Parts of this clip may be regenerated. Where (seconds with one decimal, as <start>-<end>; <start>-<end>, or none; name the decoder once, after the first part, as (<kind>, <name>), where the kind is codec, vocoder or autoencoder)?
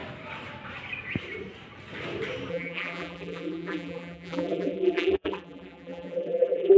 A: 2.5-6.8 (vocoder, BigVGAN v2)